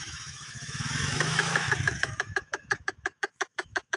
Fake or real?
fake